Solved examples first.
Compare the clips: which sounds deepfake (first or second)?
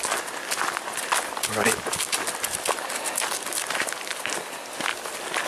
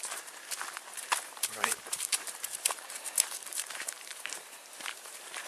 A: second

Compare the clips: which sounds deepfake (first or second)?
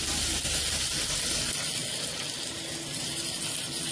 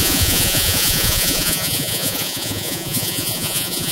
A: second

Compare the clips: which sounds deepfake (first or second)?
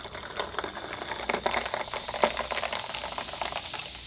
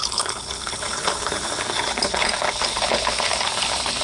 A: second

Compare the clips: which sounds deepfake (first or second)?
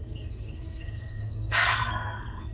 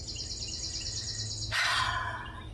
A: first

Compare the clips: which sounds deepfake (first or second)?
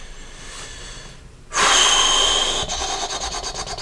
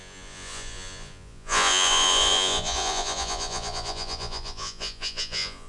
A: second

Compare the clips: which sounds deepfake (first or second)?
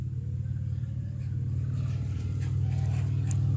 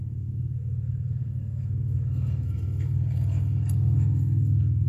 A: second